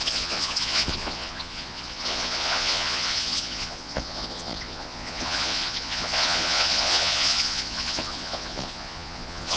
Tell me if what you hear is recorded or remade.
remade